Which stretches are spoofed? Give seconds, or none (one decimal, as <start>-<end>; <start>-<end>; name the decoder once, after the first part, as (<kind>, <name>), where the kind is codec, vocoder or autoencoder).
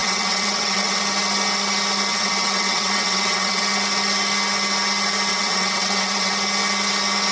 0.0-1.0 (vocoder, WaveNeXt); 2.1-3.6; 5.3-6.3